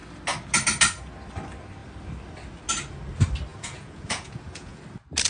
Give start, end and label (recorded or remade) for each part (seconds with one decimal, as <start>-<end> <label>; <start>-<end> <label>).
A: 0.0-3.5 recorded; 3.5-4.8 remade; 4.8-5.3 recorded

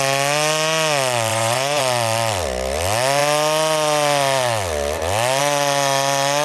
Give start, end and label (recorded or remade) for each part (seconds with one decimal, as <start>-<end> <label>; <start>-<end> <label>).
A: 0.0-1.3 recorded; 1.3-1.8 remade; 1.8-6.4 recorded

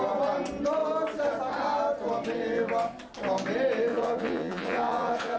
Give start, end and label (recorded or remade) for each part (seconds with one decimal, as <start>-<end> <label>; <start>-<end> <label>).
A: 0.0-3.9 recorded; 3.9-5.4 remade